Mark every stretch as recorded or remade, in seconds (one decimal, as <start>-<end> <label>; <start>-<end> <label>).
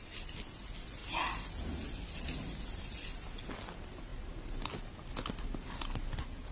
0.0-6.5 recorded